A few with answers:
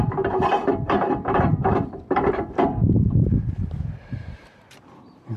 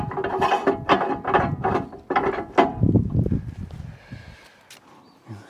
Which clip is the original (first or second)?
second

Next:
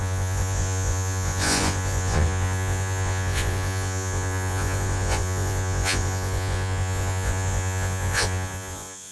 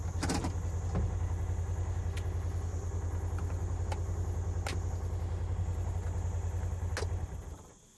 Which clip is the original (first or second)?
second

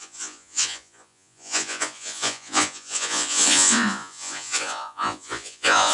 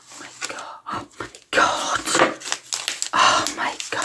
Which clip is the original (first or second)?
second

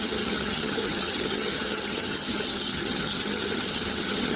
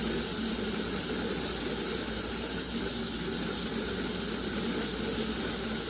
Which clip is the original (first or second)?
second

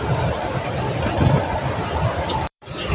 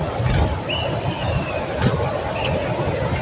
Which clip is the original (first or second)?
second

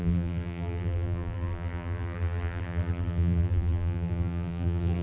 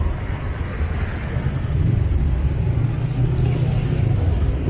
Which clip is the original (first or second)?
second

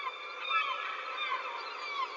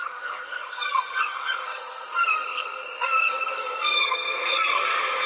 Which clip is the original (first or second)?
first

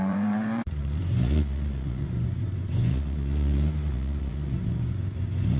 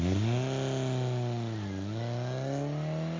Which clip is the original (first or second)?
second